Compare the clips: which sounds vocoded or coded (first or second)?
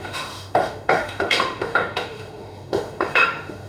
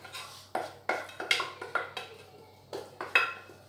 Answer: first